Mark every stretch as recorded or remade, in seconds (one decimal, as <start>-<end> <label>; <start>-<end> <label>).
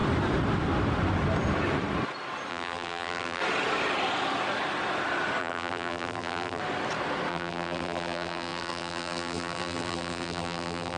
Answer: 0.0-2.5 recorded; 2.5-3.4 remade; 3.4-5.4 recorded; 5.4-6.6 remade; 6.6-7.3 recorded; 7.3-11.0 remade